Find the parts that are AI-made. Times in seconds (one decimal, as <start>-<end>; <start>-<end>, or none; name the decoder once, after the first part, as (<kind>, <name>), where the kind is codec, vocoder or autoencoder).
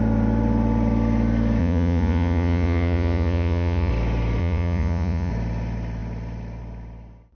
1.6-3.9 (vocoder, Vocos); 4.4-5.3